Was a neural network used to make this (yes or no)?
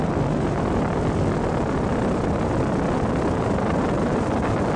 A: no